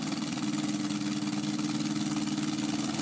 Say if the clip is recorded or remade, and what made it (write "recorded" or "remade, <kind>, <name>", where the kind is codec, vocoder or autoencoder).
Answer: recorded